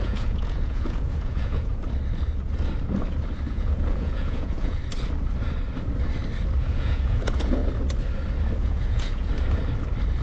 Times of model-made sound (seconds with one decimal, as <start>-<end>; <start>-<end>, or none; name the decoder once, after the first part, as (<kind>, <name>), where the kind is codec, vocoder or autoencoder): 0.0-1.7 (vocoder, Vocos); 3.5-4.8; 6.6-7.6; 8.6-9.3